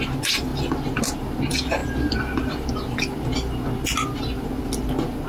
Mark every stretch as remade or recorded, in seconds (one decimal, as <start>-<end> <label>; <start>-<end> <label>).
0.0-5.3 recorded

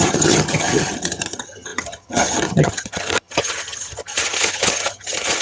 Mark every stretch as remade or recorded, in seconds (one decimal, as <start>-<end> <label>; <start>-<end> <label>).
0.0-5.4 remade

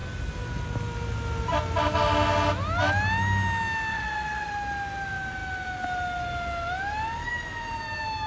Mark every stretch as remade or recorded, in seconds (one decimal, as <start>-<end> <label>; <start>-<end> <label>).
0.0-3.9 recorded; 3.9-4.5 remade; 4.5-8.3 recorded

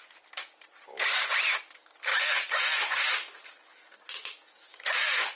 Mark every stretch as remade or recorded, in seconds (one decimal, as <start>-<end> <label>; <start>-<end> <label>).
0.0-4.7 recorded; 4.7-5.4 remade